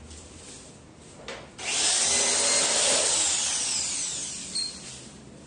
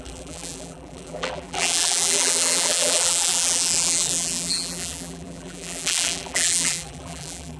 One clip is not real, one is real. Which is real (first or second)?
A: first